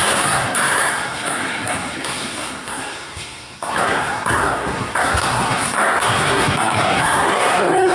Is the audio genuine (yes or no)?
no